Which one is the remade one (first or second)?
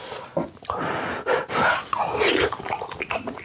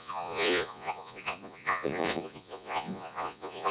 second